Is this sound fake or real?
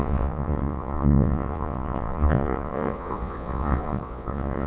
fake